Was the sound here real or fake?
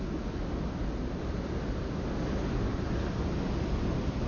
real